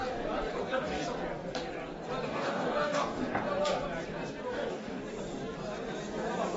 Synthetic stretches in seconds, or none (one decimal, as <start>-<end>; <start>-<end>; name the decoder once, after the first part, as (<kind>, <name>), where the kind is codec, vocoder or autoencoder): 0.6-1.0 (codec, DAC); 2.2-3.2; 4.5-5.0